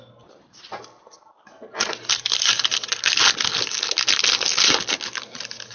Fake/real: real